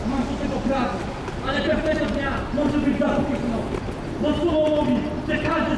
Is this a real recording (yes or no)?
yes